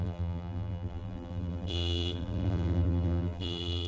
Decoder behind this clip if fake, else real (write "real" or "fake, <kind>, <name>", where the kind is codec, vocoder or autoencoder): fake, vocoder, BigVGAN v2